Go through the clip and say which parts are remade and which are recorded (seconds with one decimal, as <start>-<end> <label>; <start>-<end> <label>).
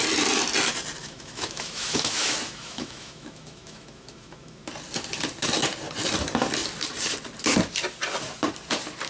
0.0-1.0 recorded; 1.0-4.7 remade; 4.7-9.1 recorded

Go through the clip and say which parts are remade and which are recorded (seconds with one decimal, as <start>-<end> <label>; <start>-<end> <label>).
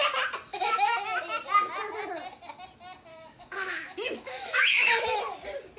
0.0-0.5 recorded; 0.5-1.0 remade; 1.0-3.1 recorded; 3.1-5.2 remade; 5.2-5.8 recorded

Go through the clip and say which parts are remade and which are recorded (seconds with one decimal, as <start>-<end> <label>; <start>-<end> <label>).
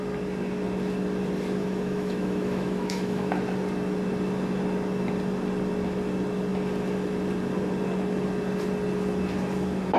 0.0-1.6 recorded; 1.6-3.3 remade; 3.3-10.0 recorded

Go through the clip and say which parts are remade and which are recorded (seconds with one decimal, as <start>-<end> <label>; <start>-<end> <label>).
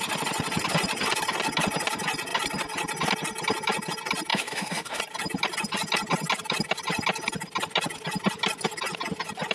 0.0-4.3 recorded; 4.3-5.0 remade; 5.0-9.5 recorded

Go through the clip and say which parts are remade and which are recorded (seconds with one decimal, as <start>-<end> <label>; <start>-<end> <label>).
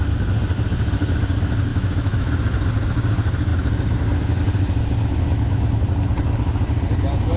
0.0-1.7 recorded; 1.7-2.3 remade; 2.3-7.4 recorded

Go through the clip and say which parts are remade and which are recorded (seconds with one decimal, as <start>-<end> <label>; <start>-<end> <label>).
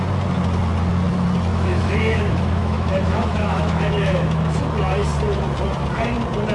0.0-1.5 recorded; 1.5-4.6 remade; 4.6-6.5 recorded